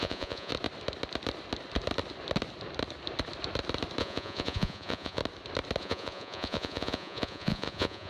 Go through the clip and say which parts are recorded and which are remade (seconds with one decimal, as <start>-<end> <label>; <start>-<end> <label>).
0.0-0.5 remade; 0.5-4.0 recorded; 4.0-5.2 remade; 5.2-5.8 recorded; 5.8-8.1 remade